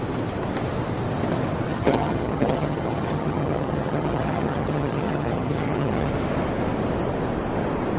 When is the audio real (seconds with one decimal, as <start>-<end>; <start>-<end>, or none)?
0.0-1.7; 6.1-8.0